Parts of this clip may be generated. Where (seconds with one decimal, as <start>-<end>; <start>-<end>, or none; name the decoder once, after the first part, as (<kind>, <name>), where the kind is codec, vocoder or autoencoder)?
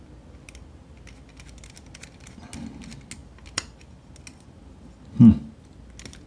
none